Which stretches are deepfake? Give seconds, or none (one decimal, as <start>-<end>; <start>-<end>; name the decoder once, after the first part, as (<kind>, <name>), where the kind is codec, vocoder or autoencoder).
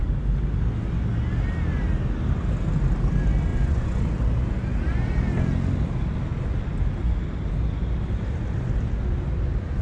3.5-4.1 (vocoder, Vocos)